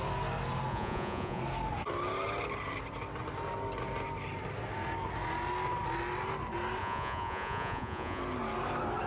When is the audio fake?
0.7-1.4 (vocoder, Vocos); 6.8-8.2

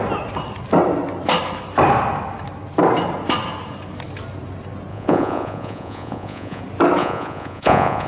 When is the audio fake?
4.9-6.6 (vocoder, Vocos); 7.0-8.1

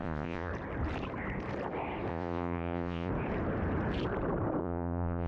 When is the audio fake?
0.0-0.5 (vocoder, Vocos); 2.1-3.1; 4.6-5.3

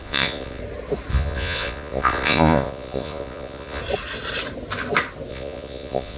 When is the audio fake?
0.0-0.6 (vocoder, Vocos); 1.1-3.8; 5.3-6.2

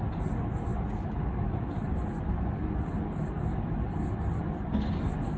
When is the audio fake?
none